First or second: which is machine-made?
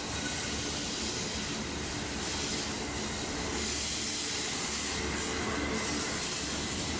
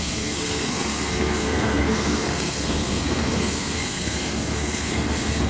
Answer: second